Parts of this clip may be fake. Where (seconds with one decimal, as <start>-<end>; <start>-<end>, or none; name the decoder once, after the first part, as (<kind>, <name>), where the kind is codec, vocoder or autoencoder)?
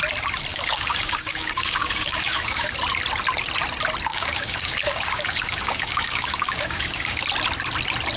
0.5-2.7 (codec, DAC); 4.1-7.2